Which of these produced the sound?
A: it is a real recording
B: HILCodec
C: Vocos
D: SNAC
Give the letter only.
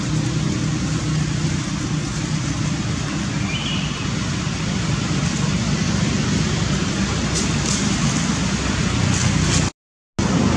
A